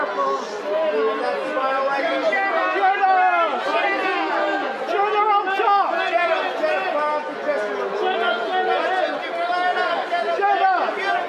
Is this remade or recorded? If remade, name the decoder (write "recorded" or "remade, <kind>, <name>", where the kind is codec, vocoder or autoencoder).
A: recorded